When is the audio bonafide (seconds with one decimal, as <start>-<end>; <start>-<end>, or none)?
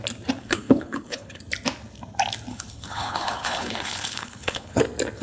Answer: 0.0-0.4; 1.4-2.5; 4.8-5.2